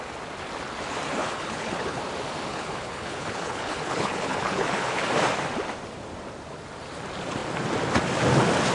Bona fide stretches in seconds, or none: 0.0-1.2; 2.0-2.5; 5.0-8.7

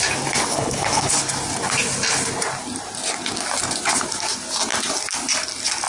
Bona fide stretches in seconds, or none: 0.0-0.5; 1.1-5.9

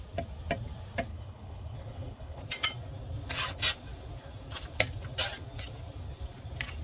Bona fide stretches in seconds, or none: 0.0-1.1; 2.4-6.8

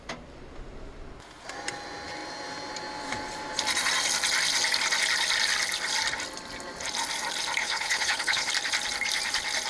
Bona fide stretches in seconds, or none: 0.0-7.6; 8.5-9.7

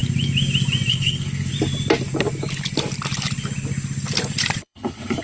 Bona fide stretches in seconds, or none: 0.0-0.9; 1.5-4.6

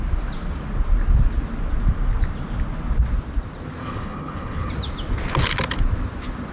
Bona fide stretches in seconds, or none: 0.0-3.8; 4.7-6.5

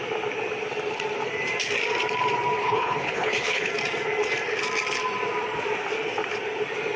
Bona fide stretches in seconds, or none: 0.0-2.6; 3.7-7.0

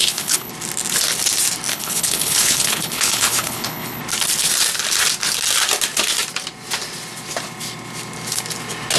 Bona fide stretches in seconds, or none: 0.5-1.7; 4.0-9.0